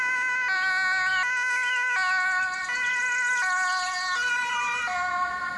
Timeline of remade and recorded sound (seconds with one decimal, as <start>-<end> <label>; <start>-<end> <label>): 0.0-5.6 recorded